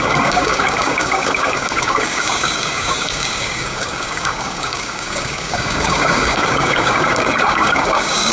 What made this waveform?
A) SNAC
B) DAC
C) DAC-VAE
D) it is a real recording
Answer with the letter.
B